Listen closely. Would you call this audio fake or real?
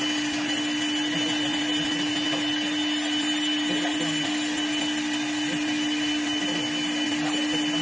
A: real